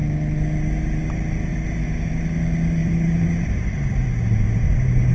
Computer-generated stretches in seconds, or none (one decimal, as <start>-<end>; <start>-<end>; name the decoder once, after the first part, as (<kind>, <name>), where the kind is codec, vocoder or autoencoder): 2.8-3.8 (vocoder, BigVGAN v2)